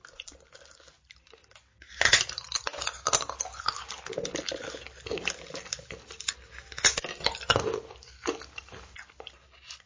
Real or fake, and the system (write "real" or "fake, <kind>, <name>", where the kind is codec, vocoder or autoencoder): real